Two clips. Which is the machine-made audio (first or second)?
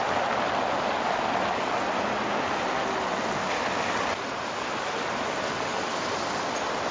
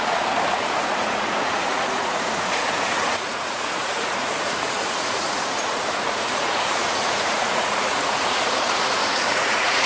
second